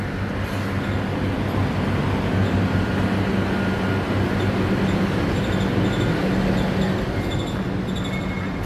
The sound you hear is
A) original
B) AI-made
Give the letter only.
A